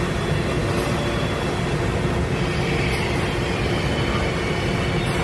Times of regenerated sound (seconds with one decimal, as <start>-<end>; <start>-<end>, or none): none